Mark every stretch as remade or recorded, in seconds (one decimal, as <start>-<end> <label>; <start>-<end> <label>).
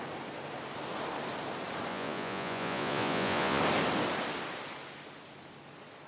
0.0-1.9 recorded; 1.9-3.6 remade; 3.6-6.1 recorded